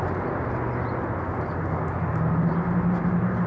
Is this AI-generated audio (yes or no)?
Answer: no